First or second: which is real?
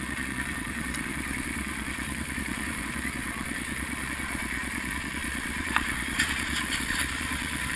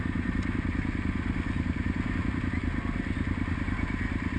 second